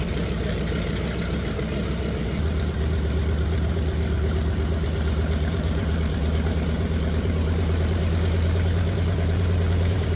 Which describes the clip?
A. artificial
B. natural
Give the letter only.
A